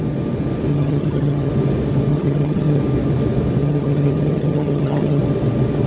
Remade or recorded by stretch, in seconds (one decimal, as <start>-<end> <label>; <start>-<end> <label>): 0.0-0.7 recorded; 0.7-1.5 remade; 1.5-2.1 recorded; 2.1-2.8 remade; 2.8-3.6 recorded; 3.6-5.2 remade; 5.2-5.9 recorded